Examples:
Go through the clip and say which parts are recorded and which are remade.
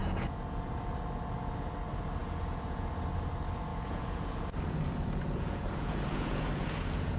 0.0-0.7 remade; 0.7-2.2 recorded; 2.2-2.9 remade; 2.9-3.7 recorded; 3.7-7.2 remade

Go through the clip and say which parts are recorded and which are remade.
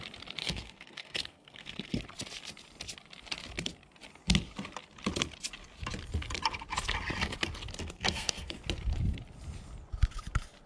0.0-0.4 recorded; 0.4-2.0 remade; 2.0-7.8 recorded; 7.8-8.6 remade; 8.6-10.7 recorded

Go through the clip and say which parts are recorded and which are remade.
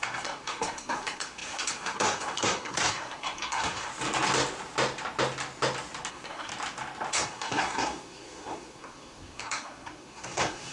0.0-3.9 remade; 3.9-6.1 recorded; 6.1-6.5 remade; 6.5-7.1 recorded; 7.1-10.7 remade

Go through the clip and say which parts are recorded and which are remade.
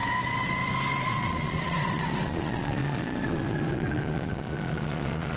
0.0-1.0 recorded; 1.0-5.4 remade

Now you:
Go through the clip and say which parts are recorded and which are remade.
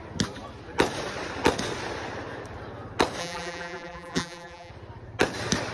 0.0-3.2 recorded; 3.2-4.7 remade; 4.7-5.7 recorded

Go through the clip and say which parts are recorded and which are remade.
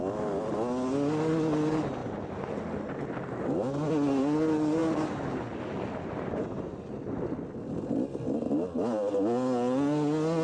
0.0-10.4 recorded